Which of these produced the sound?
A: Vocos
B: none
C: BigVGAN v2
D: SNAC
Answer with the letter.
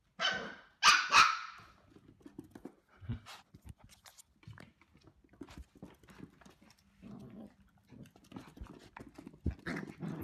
B